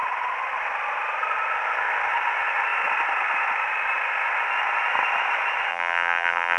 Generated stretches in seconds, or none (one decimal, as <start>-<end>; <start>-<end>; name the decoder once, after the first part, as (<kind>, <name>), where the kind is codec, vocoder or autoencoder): 5.7-6.6 (vocoder, BigVGAN v2)